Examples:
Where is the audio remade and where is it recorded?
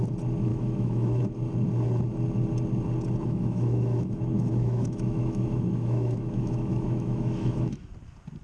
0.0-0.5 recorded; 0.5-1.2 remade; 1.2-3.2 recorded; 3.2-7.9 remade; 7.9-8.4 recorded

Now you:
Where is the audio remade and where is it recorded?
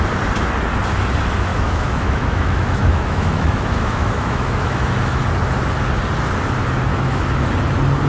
0.0-1.5 recorded; 1.5-5.2 remade; 5.2-6.9 recorded; 6.9-7.5 remade; 7.5-8.1 recorded